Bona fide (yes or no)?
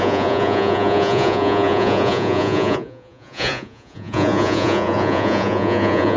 no